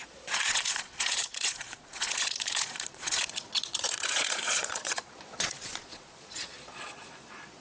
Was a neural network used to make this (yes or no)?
yes